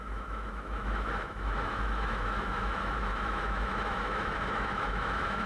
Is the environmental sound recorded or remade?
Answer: remade